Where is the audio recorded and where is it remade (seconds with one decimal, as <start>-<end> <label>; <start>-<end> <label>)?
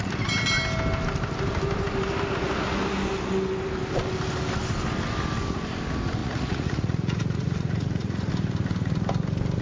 0.0-6.2 recorded; 6.2-8.3 remade; 8.3-9.6 recorded